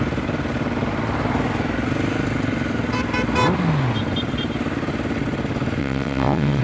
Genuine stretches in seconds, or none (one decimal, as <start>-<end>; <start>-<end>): 0.0-5.8